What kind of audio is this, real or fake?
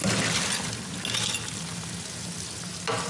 real